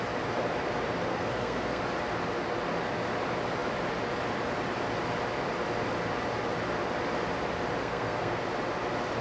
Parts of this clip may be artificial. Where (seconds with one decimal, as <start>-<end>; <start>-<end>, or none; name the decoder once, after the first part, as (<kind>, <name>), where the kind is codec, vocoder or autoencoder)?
1.1-1.8 (codec, SNAC); 7.8-8.4